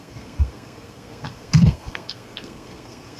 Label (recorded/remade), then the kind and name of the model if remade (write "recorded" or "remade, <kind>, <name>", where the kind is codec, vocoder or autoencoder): remade, codec, SNAC